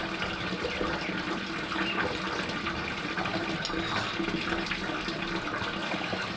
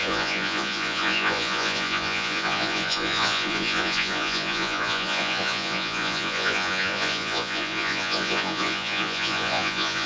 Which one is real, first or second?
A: first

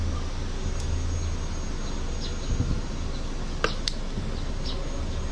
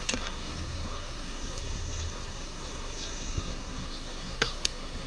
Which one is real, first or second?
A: first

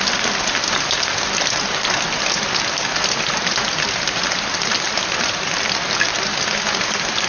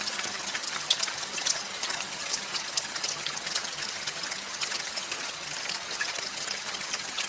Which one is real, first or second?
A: first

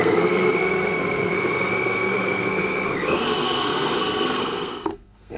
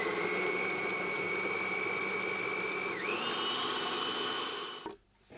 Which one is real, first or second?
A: second